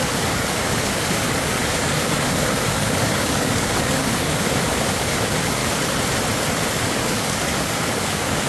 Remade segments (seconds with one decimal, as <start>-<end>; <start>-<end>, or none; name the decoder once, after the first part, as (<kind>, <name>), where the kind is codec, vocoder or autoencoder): 0.0-5.6 (codec, DAC); 6.7-8.5